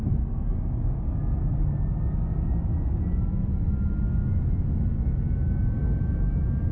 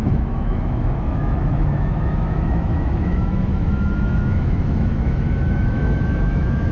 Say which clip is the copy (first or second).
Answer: second